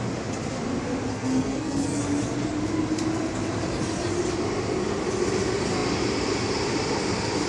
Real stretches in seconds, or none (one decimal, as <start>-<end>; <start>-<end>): 0.0-1.1; 2.0-7.5